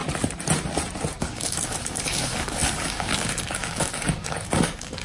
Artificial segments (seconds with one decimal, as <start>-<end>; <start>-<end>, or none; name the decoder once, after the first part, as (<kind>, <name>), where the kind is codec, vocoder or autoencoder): 1.2-5.0 (codec, DAC)